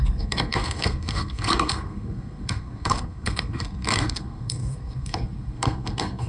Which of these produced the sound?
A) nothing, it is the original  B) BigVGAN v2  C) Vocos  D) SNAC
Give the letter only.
D